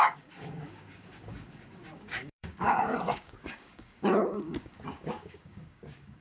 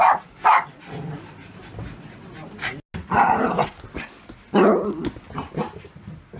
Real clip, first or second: second